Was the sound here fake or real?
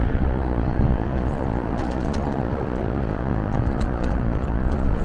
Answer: fake